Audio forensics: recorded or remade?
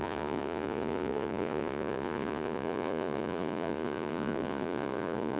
remade